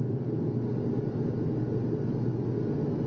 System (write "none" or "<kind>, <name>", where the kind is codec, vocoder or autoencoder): none